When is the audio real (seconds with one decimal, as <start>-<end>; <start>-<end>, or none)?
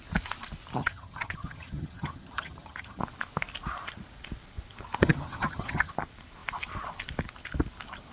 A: 0.0-0.8; 3.0-5.0; 5.9-8.1